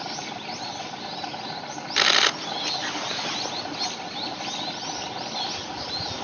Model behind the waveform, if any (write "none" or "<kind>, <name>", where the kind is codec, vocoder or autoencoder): none